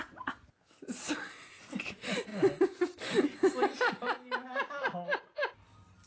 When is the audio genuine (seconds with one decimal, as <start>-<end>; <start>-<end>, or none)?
0.0-6.1